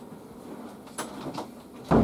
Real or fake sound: real